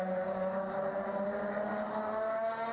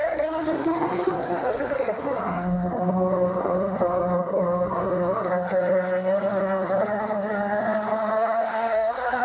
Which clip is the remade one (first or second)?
second